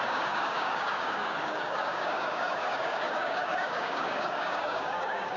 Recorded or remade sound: remade